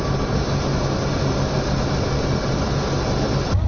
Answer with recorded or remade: recorded